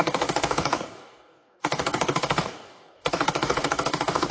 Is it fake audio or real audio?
fake